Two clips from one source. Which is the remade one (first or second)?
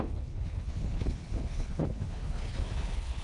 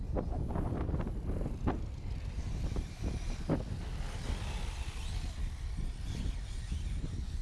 first